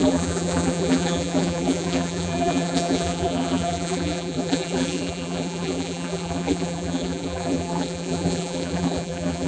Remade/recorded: remade